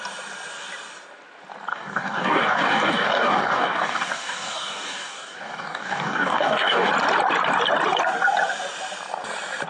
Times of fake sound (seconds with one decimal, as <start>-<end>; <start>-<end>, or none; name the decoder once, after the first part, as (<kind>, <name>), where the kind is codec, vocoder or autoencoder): 1.7-6.9 (codec, DAC)